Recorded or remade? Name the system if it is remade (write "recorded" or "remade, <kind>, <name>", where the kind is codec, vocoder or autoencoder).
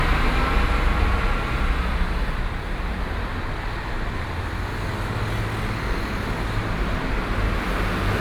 recorded